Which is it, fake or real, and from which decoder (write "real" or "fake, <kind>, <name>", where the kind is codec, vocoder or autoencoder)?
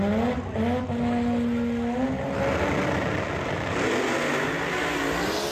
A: real